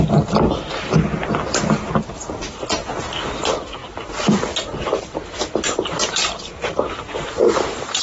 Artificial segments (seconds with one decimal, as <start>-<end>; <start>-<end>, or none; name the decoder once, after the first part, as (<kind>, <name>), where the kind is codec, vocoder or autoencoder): none

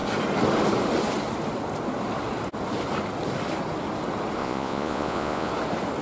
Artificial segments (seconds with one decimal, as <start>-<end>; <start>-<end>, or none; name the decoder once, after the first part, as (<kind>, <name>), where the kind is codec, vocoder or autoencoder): 4.4-5.5 (vocoder, Vocos)

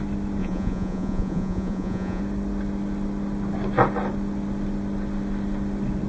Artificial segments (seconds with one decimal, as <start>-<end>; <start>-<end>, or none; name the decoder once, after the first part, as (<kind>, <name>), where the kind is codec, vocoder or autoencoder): 0.4-2.2 (vocoder, Vocos)

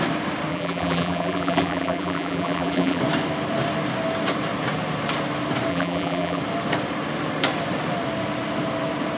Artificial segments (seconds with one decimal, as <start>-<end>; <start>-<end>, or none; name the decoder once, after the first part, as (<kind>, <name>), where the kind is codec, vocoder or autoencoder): 0.5-3.0 (vocoder, BigVGAN v2); 5.7-6.4

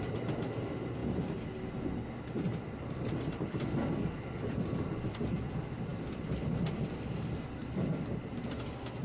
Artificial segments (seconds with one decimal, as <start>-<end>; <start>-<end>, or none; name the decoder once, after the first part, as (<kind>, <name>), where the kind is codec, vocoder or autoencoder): 0.0-1.0 (vocoder, BigVGAN v2); 2.4-9.0

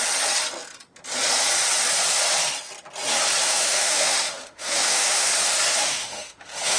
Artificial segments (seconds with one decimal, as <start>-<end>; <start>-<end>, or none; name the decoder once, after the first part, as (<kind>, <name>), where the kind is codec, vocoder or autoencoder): 3.4-5.3 (autoencoder, DAC-VAE); 5.7-6.8

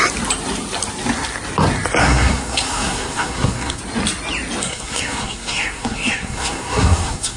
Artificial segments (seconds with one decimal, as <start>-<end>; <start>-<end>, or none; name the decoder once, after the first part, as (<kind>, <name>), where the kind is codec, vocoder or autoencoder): 2.0-3.8 (codec, SNAC); 4.6-7.4